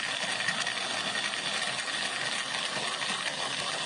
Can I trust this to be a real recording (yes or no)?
yes